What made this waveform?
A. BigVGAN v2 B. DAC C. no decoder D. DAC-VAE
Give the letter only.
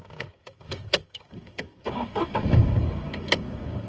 B